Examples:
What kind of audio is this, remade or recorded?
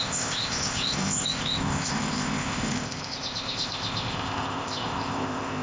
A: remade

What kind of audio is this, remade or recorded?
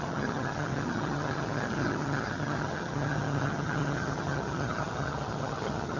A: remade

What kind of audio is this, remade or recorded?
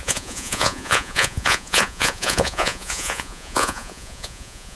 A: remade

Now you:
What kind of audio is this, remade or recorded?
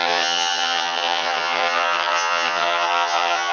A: remade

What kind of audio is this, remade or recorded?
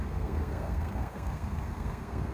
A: remade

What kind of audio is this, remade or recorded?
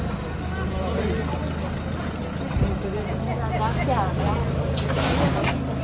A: recorded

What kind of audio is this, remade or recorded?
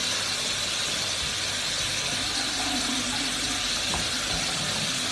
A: recorded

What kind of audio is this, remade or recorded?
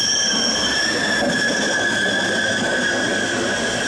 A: recorded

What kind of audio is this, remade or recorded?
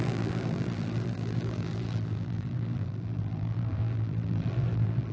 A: remade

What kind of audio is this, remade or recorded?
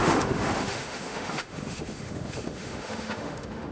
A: remade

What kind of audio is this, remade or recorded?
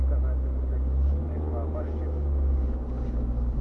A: recorded